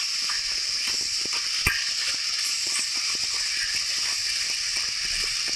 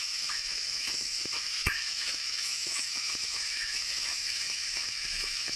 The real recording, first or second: first